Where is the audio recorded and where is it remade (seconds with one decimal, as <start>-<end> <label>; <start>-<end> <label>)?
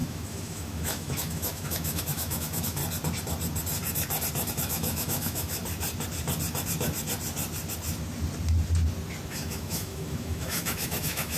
0.0-2.8 remade; 2.8-4.5 recorded; 4.5-5.6 remade; 5.6-9.3 recorded; 9.3-11.4 remade